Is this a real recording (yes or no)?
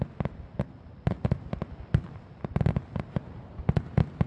yes